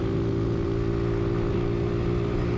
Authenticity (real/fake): real